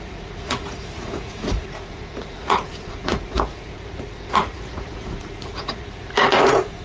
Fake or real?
fake